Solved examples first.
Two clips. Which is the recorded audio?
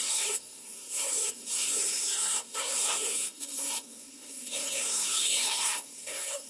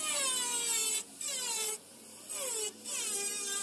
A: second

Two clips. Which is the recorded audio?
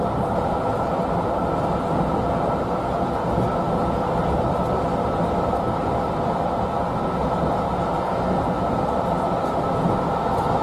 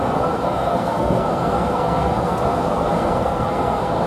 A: first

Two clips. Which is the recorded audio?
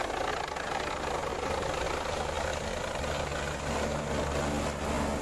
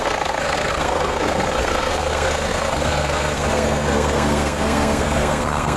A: first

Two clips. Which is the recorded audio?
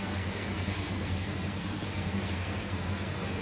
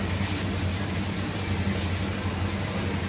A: second